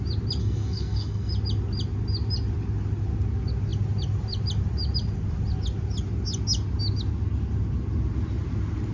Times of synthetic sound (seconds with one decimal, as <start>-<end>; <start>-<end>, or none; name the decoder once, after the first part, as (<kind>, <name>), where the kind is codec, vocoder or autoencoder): 0.4-1.3 (codec, SNAC)